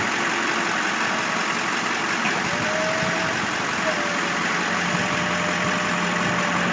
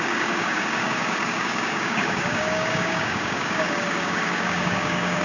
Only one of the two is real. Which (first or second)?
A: first